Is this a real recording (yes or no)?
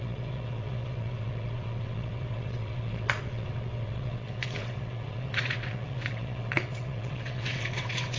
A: no